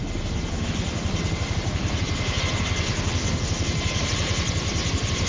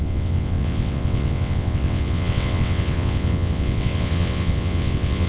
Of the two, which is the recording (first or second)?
first